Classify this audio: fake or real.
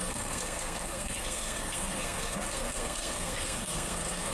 fake